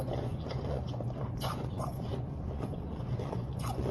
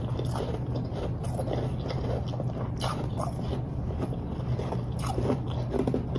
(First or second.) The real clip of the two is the second